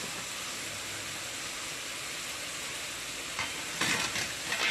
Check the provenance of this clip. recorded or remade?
recorded